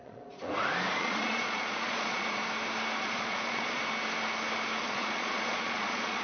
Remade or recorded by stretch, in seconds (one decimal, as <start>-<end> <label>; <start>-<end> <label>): 0.0-0.5 remade; 0.5-1.0 recorded; 1.0-2.4 remade; 2.4-3.0 recorded; 3.0-3.8 remade; 3.8-4.8 recorded; 4.8-6.2 remade